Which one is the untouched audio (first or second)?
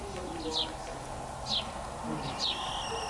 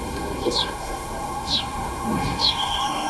first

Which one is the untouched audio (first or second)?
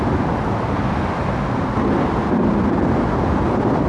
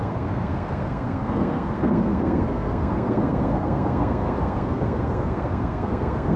first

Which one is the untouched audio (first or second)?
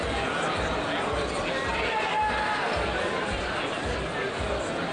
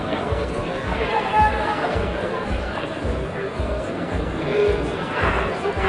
first